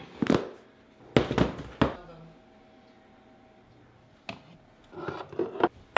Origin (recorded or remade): recorded